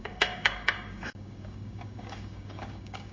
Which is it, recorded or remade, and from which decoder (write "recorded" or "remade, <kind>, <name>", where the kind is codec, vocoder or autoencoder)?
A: remade, codec, DAC